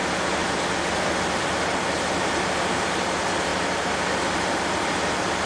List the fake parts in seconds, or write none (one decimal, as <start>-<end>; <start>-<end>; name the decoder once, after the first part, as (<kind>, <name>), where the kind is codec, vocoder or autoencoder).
none